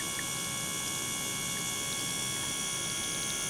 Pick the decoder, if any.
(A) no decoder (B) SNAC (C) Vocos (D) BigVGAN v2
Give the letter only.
A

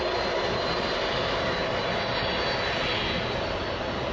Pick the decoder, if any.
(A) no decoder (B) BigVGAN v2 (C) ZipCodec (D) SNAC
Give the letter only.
A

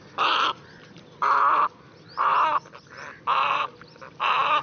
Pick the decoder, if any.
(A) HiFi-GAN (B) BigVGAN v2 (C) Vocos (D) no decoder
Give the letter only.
D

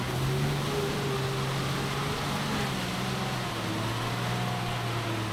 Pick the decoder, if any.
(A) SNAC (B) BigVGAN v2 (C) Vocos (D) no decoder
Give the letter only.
D